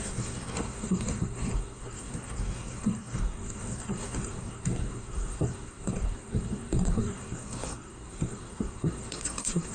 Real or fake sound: fake